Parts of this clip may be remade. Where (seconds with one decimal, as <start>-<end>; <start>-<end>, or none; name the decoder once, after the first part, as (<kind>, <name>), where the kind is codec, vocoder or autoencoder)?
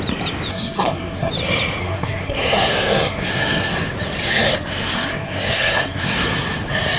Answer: 0.5-1.3 (codec, SNAC); 1.8-3.7; 4.2-6.3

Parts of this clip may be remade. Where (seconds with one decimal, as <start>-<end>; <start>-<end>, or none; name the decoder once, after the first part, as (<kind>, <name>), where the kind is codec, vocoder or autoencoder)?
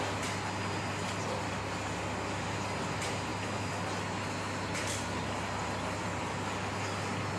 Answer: none